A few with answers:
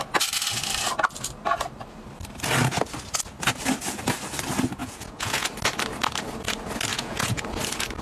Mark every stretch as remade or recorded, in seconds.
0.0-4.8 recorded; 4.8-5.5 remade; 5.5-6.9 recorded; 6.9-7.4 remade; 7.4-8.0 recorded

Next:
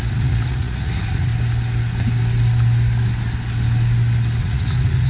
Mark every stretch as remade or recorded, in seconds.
0.0-1.3 remade; 1.3-4.4 recorded; 4.4-5.1 remade